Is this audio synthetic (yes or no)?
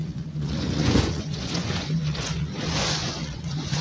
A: yes